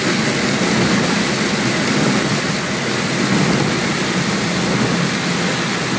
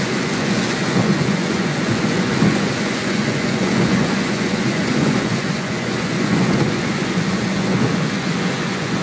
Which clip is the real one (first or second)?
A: first